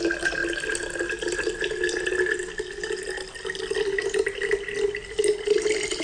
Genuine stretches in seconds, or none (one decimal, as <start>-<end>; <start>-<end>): 0.0-6.0